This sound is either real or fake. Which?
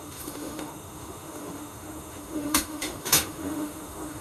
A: fake